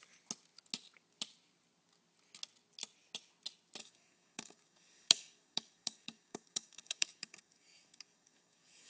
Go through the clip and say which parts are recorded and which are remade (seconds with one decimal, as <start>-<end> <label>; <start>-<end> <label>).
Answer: 0.0-3.8 recorded; 3.8-8.9 remade